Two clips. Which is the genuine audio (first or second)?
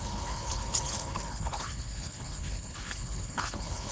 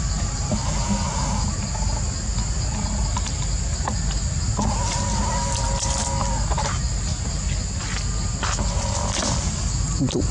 second